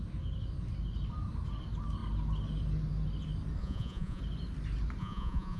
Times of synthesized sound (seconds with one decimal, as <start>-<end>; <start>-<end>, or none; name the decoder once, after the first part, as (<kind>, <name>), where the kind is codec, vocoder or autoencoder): 3.6-4.2 (vocoder, Vocos); 5.0-5.6